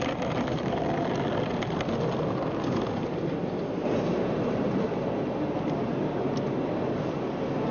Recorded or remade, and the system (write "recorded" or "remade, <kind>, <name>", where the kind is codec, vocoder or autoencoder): recorded